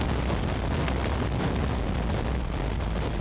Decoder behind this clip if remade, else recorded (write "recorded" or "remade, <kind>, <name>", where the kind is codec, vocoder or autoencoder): recorded